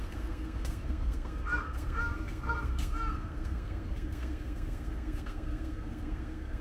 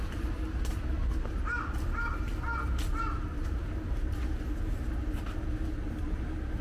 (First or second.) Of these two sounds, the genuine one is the second